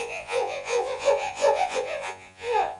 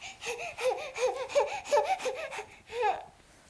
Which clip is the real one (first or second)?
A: second